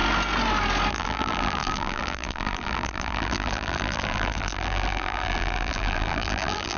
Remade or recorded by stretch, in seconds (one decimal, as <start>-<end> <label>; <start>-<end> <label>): 0.0-0.9 recorded; 0.9-6.8 remade